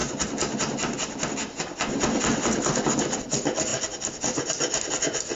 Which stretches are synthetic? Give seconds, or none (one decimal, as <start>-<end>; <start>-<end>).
0.0-1.3